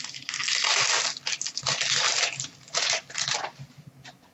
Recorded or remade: recorded